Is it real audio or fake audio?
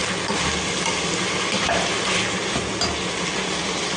real